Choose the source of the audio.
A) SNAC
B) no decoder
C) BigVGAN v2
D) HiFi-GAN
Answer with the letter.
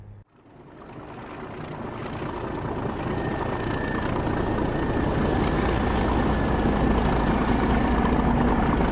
B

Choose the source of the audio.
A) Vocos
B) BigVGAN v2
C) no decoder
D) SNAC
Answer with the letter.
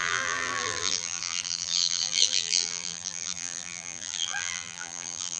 B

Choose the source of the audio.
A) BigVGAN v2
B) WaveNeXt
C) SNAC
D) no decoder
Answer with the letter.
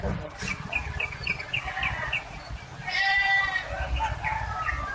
A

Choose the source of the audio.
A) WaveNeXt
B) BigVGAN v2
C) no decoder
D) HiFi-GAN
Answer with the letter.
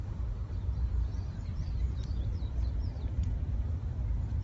B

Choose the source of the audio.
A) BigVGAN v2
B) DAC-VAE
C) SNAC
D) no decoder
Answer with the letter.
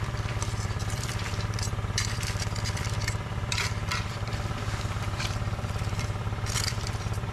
A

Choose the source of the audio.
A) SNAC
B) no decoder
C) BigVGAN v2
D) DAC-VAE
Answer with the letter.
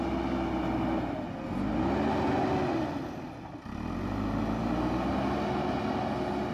B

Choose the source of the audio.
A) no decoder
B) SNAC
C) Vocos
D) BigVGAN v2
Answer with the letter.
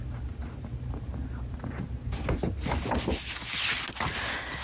A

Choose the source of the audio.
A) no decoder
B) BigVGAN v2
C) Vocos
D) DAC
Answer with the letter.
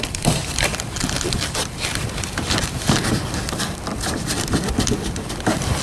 B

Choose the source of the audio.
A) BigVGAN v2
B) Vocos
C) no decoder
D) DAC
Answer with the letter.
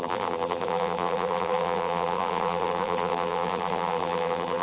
A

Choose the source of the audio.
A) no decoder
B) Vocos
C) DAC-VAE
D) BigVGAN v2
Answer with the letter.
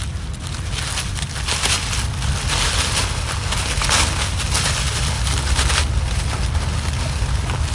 A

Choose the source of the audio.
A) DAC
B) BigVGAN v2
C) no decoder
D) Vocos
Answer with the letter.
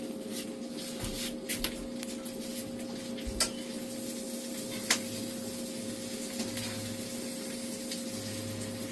C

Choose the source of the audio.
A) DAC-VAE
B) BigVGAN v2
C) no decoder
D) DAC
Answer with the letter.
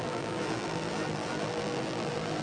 B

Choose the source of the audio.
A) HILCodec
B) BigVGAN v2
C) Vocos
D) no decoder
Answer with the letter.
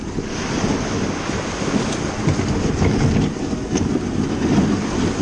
D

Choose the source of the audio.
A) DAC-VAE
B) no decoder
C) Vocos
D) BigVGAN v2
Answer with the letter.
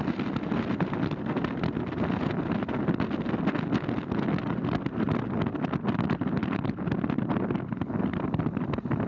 B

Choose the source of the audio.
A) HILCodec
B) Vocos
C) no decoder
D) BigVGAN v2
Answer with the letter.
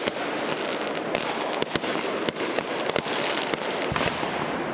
C